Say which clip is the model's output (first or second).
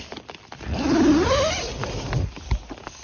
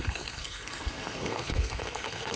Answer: second